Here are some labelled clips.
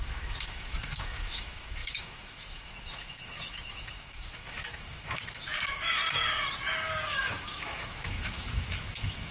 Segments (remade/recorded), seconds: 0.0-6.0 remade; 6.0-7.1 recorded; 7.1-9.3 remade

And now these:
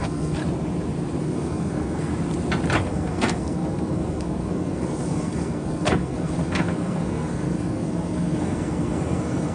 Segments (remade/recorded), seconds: 0.0-0.4 remade; 0.4-1.2 recorded; 1.2-2.1 remade; 2.1-2.9 recorded; 2.9-9.5 remade

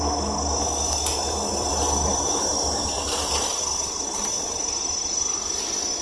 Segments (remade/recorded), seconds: 0.0-1.1 recorded; 1.1-1.7 remade; 1.7-2.1 recorded; 2.1-6.0 remade

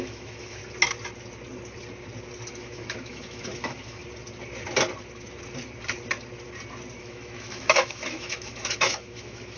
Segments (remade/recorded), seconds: 0.0-0.6 remade; 0.6-2.5 recorded; 2.5-4.0 remade; 4.0-7.0 recorded; 7.0-9.6 remade

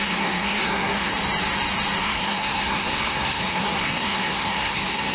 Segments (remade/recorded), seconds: 0.0-1.1 remade; 1.1-2.0 recorded; 2.0-5.1 remade

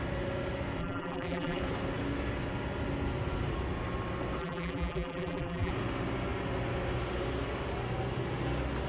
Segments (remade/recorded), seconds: 0.0-0.8 recorded; 0.8-1.6 remade; 1.6-4.4 recorded; 4.4-5.7 remade; 5.7-8.9 recorded

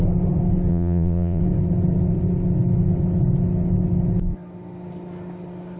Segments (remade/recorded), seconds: 0.0-0.7 recorded; 0.7-1.4 remade; 1.4-5.8 recorded

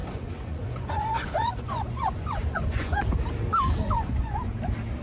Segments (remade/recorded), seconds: 0.0-3.0 remade; 3.0-3.8 recorded; 3.8-4.5 remade; 4.5-5.0 recorded